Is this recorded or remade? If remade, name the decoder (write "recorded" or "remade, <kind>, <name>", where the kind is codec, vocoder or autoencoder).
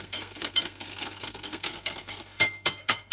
remade, codec, SNAC